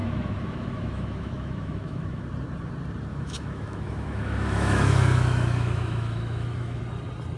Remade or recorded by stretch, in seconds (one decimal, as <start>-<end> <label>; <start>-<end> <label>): 0.0-2.2 remade; 2.2-3.1 recorded; 3.1-6.8 remade; 6.8-7.4 recorded

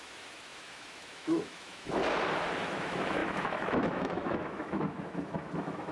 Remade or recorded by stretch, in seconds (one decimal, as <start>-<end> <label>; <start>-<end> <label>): 0.0-2.0 remade; 2.0-2.6 recorded; 2.6-5.9 remade

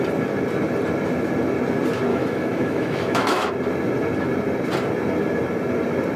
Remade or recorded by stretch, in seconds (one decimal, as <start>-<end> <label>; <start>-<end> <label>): 0.0-2.1 recorded; 2.1-3.5 remade; 3.5-6.2 recorded

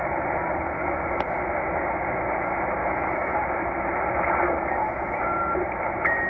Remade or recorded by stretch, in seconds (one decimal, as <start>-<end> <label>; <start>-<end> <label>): 0.0-2.8 recorded; 2.8-3.4 remade; 3.4-4.8 recorded; 4.8-5.6 remade; 5.6-6.3 recorded

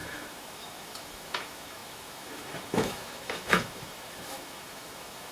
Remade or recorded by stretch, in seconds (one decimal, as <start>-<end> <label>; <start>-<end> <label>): 0.0-5.3 remade

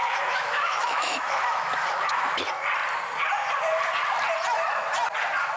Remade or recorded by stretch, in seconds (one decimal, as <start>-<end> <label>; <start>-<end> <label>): 0.0-2.4 remade; 2.4-5.6 recorded

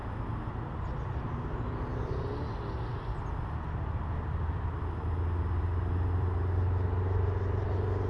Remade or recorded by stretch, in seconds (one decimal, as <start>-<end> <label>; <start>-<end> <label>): 0.0-8.1 recorded

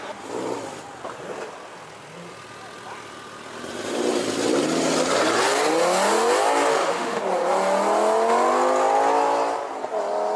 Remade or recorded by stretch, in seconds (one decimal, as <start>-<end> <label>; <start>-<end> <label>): 0.0-6.7 recorded; 6.7-7.2 remade; 7.2-10.4 recorded